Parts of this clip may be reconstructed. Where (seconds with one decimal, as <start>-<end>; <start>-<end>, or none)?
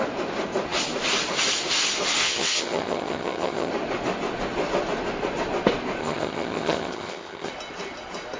2.2-3.7; 6.0-7.5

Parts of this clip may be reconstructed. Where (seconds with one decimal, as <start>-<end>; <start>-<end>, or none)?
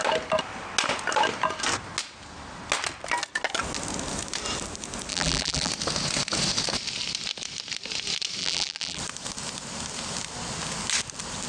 5.1-5.7; 8.4-9.0